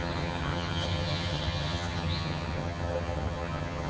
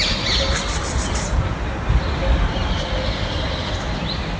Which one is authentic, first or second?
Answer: second